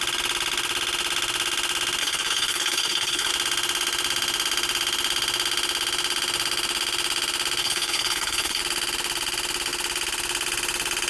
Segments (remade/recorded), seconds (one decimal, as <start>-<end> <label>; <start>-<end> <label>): 0.0-2.0 recorded; 2.0-3.3 remade; 3.3-7.6 recorded; 7.6-8.6 remade; 8.6-11.1 recorded